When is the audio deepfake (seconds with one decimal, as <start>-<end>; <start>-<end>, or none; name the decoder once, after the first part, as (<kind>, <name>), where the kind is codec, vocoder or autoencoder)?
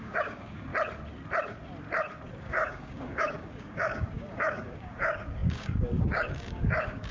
0.0-0.7 (codec, DAC); 2.4-7.1